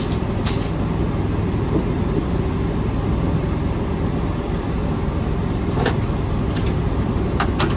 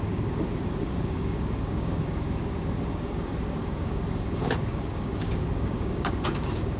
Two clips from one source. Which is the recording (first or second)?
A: first